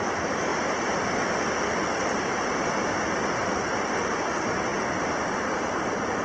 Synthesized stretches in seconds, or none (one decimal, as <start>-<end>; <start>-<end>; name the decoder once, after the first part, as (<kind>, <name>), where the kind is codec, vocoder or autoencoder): none